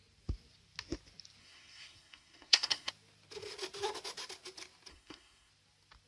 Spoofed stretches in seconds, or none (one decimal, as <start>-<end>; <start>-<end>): 1.4-2.9; 4.9-5.5